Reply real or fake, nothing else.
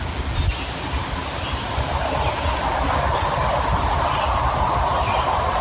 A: real